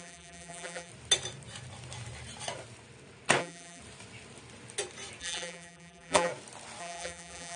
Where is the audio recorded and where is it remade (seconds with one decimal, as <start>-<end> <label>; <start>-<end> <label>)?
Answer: 0.0-0.9 remade; 0.9-3.4 recorded; 3.4-3.8 remade; 3.8-5.2 recorded; 5.2-6.3 remade; 6.3-6.8 recorded; 6.8-7.6 remade